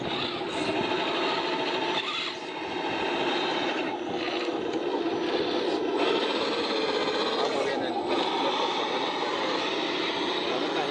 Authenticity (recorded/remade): recorded